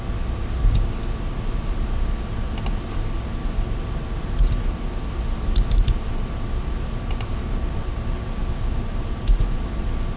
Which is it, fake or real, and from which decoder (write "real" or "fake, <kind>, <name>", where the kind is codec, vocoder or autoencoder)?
real